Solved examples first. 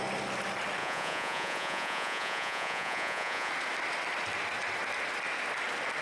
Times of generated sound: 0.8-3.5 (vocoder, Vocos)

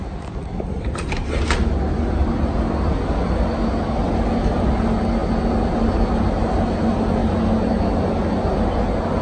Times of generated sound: none

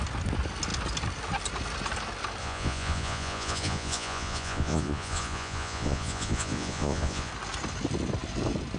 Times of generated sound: 2.4-7.3 (vocoder, Vocos)

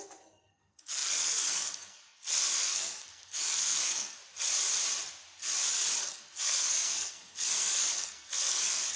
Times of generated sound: 0.0-4.2 (codec, SNAC); 6.0-9.0

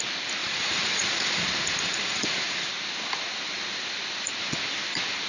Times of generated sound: 0.4-2.7 (vocoder, Vocos)

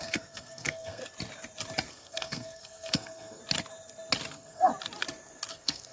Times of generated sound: 0.0-1.0 (codec, SNAC); 1.9-3.4; 4.3-4.7; 5.5-5.9

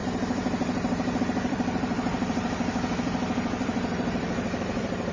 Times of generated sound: 1.2-5.1 (vocoder, BigVGAN v2)